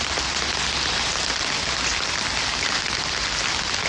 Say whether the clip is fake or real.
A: real